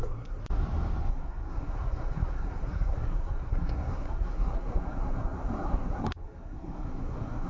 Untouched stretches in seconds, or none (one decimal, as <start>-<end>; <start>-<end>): 0.4-1.1

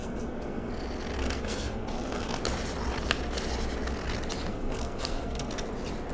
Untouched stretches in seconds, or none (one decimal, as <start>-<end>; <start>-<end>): 0.7-1.2; 2.4-4.5; 5.5-6.1

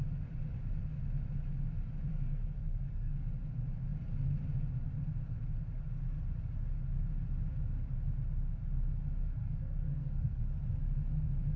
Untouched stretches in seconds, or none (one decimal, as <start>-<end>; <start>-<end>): 0.0-2.1; 3.3-9.4; 10.4-11.6

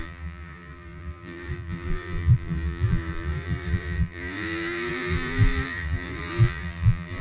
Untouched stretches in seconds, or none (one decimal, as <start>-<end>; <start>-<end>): none

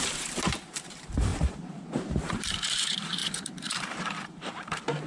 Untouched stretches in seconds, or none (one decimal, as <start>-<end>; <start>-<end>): none

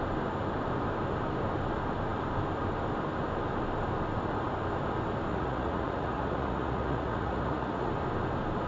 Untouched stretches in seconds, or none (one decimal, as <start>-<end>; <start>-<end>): 0.0-5.3; 7.9-8.7